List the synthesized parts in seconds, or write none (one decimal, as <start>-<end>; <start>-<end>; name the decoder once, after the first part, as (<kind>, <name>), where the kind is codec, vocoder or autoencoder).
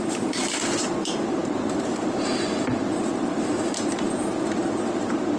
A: 0.0-5.4 (vocoder, BigVGAN v2)